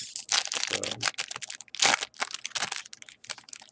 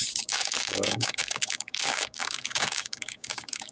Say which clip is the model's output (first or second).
second